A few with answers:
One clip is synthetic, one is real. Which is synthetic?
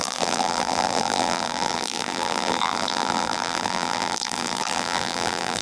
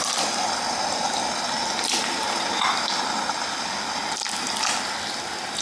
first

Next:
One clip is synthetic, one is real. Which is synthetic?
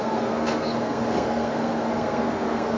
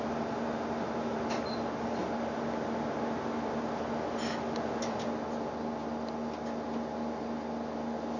first